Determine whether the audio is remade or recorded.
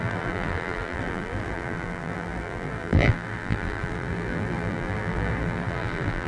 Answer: remade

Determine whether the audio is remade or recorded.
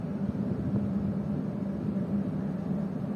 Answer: recorded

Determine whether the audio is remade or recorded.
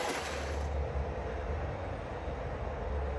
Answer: recorded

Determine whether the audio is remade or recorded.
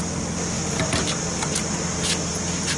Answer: recorded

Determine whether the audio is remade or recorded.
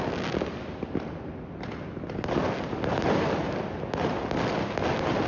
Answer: recorded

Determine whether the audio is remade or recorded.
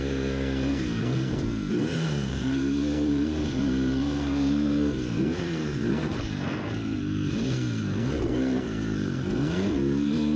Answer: remade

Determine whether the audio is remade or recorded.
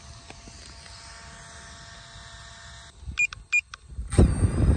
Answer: recorded